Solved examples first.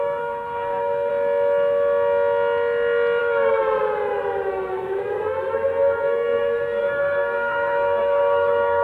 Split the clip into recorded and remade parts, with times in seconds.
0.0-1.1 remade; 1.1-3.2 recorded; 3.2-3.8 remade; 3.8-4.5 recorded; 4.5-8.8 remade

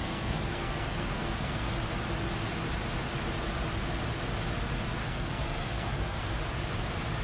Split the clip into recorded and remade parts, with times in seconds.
0.0-1.7 remade; 1.7-5.0 recorded; 5.0-6.2 remade; 6.2-7.2 recorded

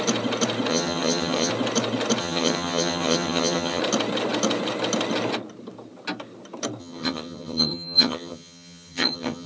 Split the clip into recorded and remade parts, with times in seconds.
0.0-0.7 recorded; 0.7-1.5 remade; 1.5-2.2 recorded; 2.2-3.8 remade; 3.8-6.8 recorded; 6.8-9.5 remade